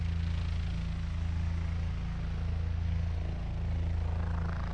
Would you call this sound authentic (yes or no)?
yes